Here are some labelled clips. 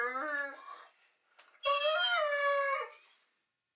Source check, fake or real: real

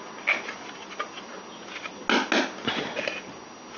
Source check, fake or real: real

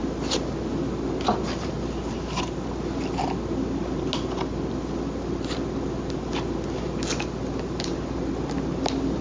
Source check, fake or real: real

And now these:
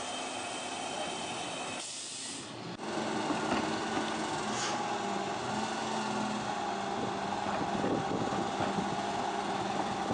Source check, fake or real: real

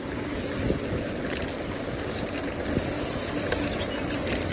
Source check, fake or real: real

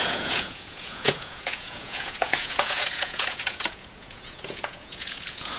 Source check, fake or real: fake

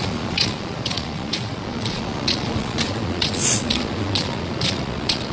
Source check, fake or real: fake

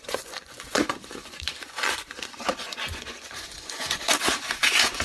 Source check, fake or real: fake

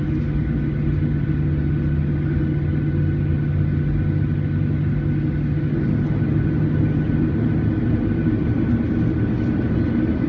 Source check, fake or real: real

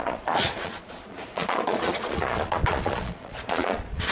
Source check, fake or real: fake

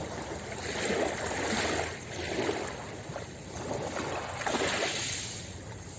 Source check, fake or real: real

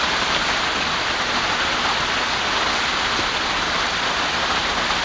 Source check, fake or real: real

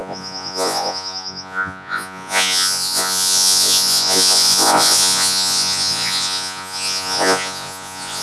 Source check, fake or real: fake